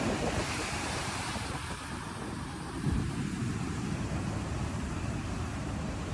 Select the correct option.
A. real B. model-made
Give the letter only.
B